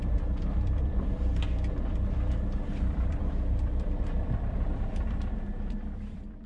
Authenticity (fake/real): fake